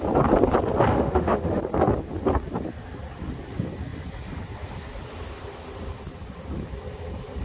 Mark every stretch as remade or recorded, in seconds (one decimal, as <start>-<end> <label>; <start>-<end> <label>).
0.0-0.9 recorded; 0.9-1.6 remade; 1.6-7.4 recorded